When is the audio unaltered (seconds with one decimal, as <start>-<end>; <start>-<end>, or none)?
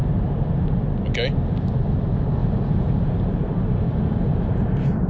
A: 0.0-2.4